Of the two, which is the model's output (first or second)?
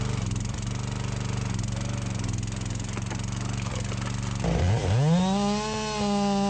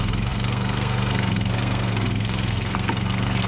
second